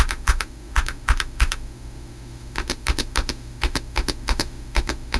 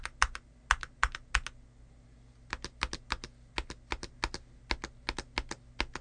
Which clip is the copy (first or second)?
first